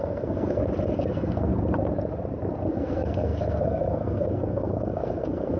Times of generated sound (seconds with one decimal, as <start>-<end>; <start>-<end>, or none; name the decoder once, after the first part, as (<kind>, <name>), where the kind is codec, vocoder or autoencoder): 0.0-0.6 (codec, SNAC); 1.1-1.5; 2.7-5.6